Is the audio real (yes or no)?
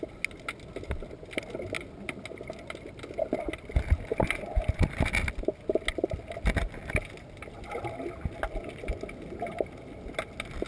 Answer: yes